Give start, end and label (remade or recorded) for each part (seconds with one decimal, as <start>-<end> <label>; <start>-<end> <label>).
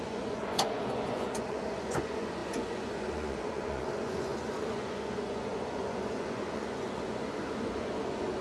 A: 0.0-8.4 remade